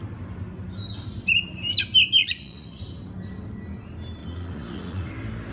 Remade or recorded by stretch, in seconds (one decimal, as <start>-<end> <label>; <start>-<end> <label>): 0.0-2.2 recorded; 2.2-2.8 remade; 2.8-4.2 recorded; 4.2-5.1 remade; 5.1-5.5 recorded